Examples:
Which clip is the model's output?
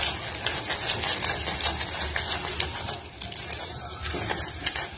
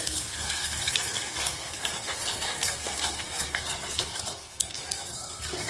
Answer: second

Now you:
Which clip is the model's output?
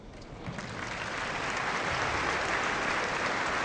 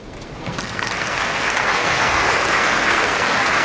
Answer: second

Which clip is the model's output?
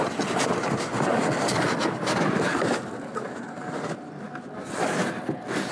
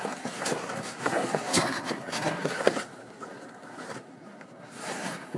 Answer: second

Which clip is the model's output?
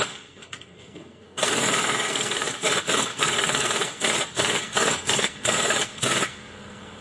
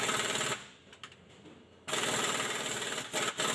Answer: first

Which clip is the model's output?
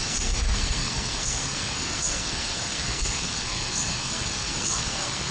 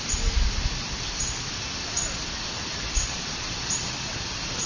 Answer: first